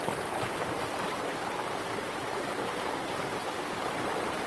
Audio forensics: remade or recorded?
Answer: remade